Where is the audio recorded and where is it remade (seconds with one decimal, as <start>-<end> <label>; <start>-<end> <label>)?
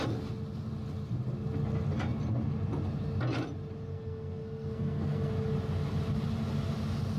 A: 0.0-3.9 recorded; 3.9-5.3 remade; 5.3-7.2 recorded